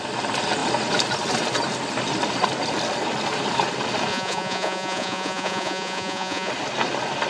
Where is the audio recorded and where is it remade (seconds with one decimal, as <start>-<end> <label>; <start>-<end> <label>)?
0.0-4.1 recorded; 4.1-6.5 remade; 6.5-7.3 recorded

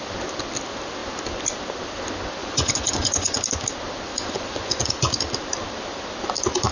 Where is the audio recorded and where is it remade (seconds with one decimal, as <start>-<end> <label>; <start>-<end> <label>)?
0.0-2.4 recorded; 2.4-3.4 remade; 3.4-4.1 recorded; 4.1-4.8 remade; 4.8-6.7 recorded